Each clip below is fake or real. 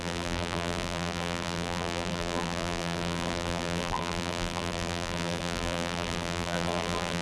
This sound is fake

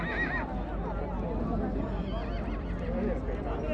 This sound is real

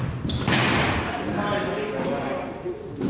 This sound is real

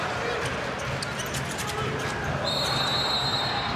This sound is real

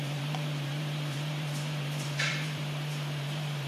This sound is fake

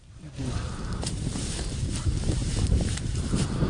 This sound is fake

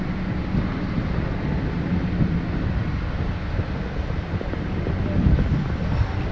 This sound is real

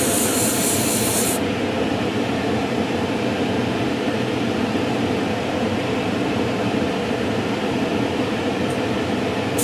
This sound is fake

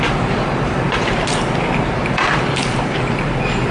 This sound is fake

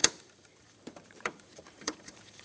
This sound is fake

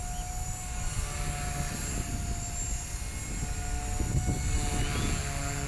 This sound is real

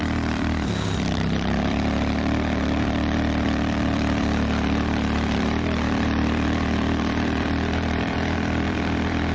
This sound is fake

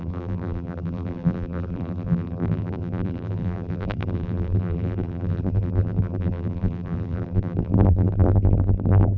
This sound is fake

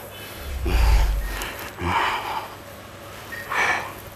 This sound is real